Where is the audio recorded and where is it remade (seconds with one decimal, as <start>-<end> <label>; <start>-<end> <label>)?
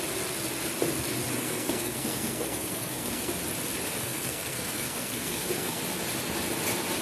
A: 0.0-1.4 recorded; 1.4-3.3 remade; 3.3-4.0 recorded; 4.0-5.8 remade; 5.8-7.0 recorded